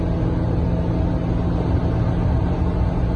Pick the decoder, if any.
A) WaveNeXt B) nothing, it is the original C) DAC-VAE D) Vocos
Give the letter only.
B